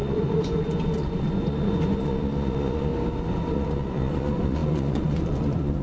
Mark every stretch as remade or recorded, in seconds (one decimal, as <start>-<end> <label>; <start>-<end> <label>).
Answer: 0.0-2.9 remade; 2.9-3.5 recorded; 3.5-5.8 remade